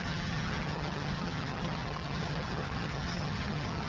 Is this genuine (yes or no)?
no